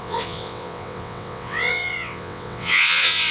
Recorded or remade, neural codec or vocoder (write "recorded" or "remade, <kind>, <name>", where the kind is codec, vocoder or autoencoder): remade, vocoder, WaveNeXt